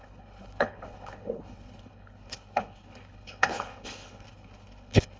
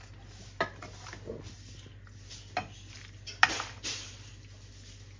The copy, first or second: first